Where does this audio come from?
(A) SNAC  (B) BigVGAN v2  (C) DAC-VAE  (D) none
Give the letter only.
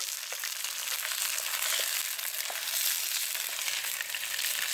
D